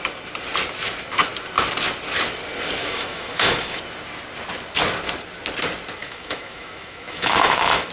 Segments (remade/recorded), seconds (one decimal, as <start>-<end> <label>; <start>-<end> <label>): 0.0-2.8 recorded; 2.8-3.8 remade; 3.8-6.0 recorded; 6.0-7.9 remade